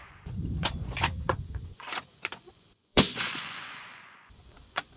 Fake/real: fake